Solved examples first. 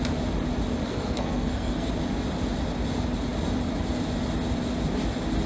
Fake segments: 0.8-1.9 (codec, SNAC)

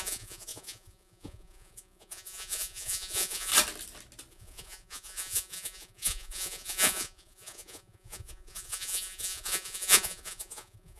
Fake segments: 0.0-3.5 (vocoder, Vocos); 4.3-11.0

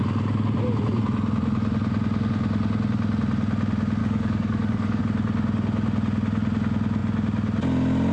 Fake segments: 4.0-5.0 (codec, DAC)

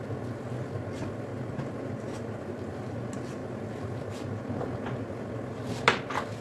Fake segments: none